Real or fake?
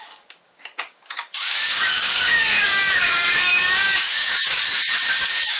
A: fake